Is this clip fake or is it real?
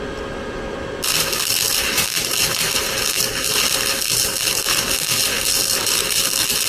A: real